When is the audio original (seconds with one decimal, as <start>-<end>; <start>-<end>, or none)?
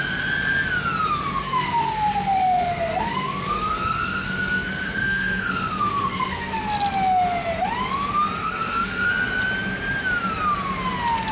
0.0-1.4; 6.6-8.4; 9.1-11.3